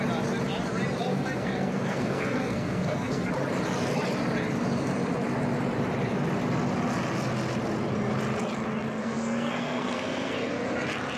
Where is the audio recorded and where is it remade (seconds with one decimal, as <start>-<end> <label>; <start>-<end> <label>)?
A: 0.0-1.1 recorded; 1.1-3.3 remade; 3.3-9.0 recorded; 9.0-10.5 remade; 10.5-11.2 recorded

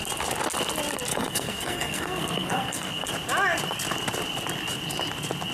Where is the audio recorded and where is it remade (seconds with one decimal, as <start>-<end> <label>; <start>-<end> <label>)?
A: 0.0-1.1 recorded; 1.1-3.1 remade; 3.1-5.5 recorded

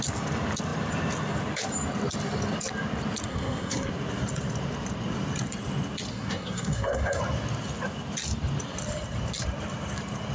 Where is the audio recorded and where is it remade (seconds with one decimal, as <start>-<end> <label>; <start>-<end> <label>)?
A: 0.0-3.3 recorded; 3.3-3.9 remade; 3.9-6.1 recorded; 6.1-7.2 remade; 7.2-10.3 recorded

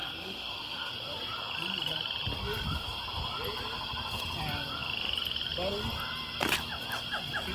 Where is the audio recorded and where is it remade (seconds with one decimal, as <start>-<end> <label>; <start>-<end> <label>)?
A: 0.0-0.9 remade; 0.9-7.5 recorded

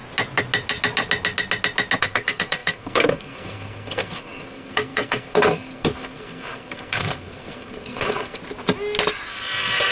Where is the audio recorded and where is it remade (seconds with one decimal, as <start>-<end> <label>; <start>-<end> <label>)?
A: 0.0-2.0 recorded; 2.0-8.4 remade; 8.4-9.3 recorded; 9.3-9.9 remade